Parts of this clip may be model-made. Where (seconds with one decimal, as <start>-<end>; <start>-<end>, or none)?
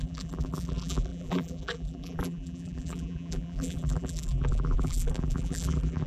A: 0.0-6.1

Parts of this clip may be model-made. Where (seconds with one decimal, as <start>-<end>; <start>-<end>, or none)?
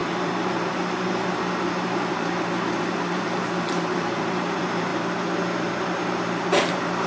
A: 0.0-4.9; 5.6-7.1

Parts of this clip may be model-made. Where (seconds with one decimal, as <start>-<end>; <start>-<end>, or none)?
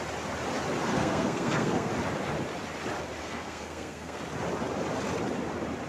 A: 0.9-1.9; 3.2-4.2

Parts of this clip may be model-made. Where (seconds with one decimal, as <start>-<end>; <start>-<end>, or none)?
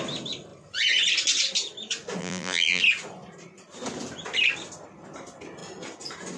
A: 2.2-2.8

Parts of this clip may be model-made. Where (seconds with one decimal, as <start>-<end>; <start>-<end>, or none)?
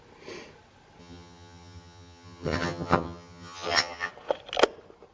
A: 1.0-4.1